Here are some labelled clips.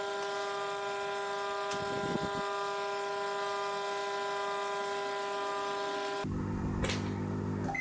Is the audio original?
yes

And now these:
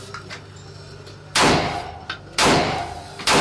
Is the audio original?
yes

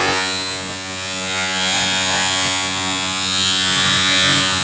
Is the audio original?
no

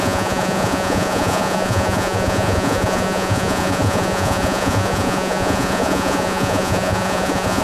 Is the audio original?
no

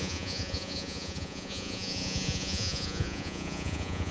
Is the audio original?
no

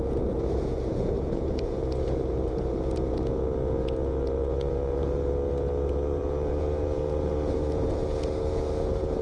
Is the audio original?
no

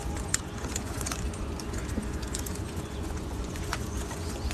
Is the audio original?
no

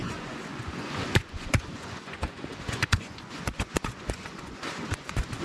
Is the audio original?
no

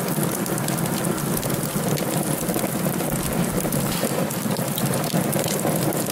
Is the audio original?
yes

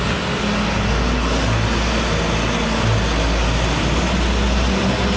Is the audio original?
yes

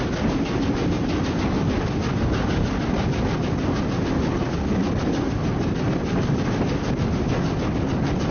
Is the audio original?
yes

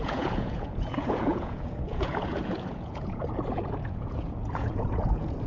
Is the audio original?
no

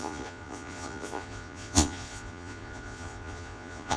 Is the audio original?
no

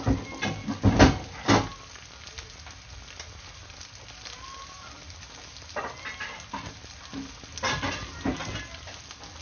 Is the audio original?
yes